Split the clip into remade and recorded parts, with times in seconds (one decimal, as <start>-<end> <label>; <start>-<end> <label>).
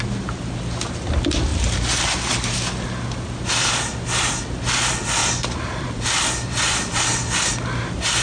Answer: 0.0-5.2 recorded; 5.2-6.9 remade; 6.9-8.2 recorded